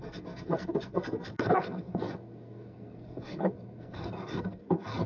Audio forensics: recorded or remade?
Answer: remade